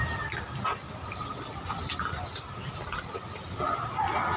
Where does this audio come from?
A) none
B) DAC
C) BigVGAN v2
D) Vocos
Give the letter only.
A